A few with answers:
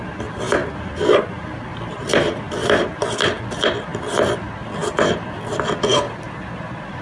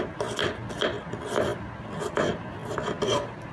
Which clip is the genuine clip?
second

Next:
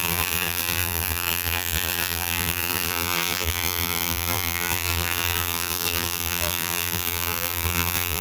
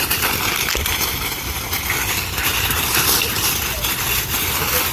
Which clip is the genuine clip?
second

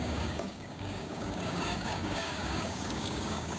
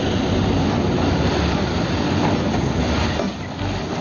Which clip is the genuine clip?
second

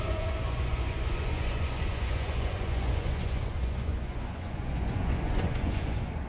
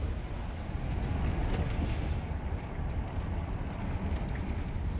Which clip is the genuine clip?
second